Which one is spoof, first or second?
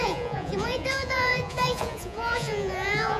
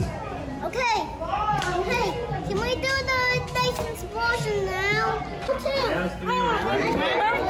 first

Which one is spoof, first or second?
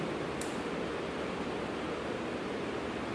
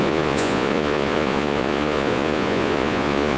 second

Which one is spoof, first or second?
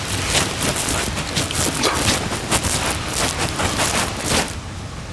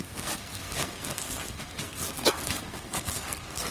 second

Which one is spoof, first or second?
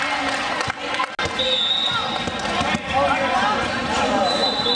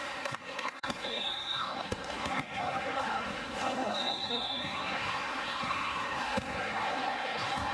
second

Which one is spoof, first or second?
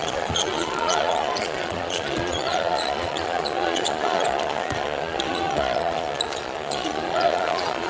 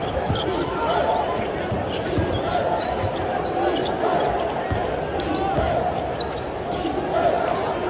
first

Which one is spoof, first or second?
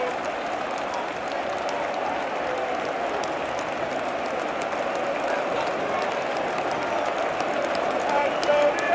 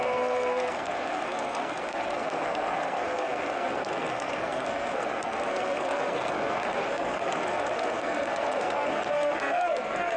second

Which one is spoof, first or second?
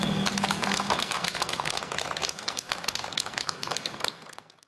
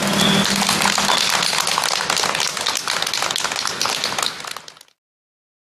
first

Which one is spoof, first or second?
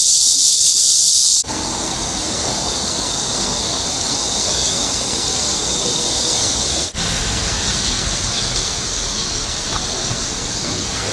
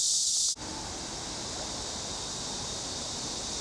first